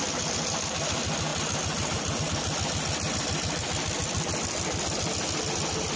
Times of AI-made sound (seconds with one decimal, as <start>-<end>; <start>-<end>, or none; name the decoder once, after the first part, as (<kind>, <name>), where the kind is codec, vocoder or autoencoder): none

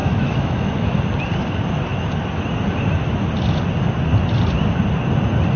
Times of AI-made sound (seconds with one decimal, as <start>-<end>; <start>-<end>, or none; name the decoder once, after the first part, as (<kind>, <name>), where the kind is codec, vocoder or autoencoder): 0.0-1.0 (autoencoder, DAC-VAE)

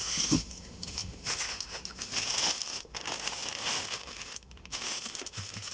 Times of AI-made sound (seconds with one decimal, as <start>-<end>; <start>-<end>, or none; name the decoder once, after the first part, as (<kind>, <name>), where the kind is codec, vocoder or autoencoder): 0.0-5.7 (autoencoder, DAC-VAE)

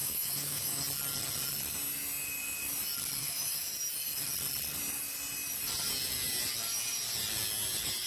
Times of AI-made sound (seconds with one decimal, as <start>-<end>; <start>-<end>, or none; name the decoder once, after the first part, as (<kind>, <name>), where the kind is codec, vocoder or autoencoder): 0.0-0.8 (autoencoder, DAC-VAE); 3.2-3.7

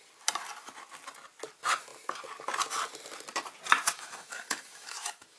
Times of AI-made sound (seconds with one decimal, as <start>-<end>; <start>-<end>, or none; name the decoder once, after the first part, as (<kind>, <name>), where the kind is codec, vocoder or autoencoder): 3.9-5.4 (autoencoder, DAC-VAE)

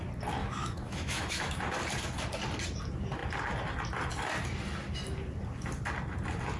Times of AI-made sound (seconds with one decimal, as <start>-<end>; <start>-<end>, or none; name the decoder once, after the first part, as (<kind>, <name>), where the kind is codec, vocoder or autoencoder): 0.4-1.6 (autoencoder, DAC-VAE)